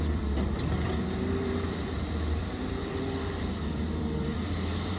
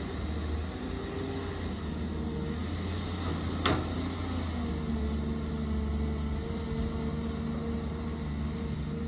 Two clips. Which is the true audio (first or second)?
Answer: second